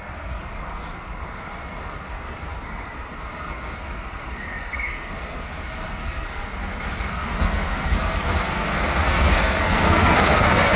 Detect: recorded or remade remade